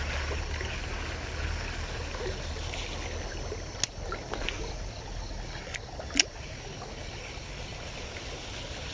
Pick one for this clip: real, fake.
real